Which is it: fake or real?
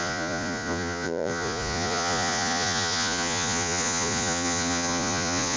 fake